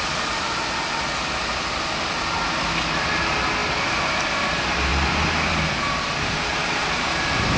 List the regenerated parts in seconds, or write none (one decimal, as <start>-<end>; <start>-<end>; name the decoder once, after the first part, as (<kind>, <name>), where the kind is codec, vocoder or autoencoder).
none